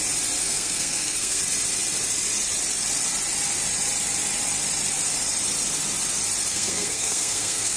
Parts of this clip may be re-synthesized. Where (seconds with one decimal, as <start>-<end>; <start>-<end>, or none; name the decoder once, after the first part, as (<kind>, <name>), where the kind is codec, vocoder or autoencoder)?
0.4-1.4 (codec, SNAC); 6.5-7.8